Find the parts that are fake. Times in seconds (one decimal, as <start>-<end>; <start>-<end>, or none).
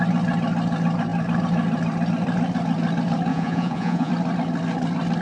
3.3-4.1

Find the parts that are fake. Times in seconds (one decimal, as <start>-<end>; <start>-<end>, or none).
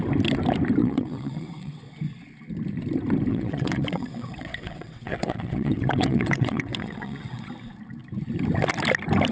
0.8-1.8; 3.3-7.5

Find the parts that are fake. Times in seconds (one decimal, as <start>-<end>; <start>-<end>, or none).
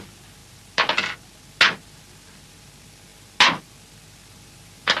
none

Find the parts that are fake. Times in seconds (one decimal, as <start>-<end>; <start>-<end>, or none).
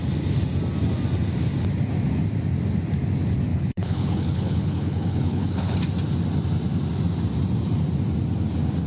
3.5-5.8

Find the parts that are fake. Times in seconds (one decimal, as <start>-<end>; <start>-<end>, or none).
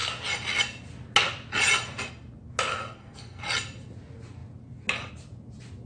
2.7-3.4